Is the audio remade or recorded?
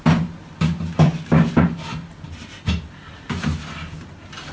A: recorded